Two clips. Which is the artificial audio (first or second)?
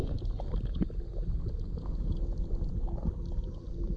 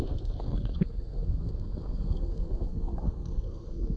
second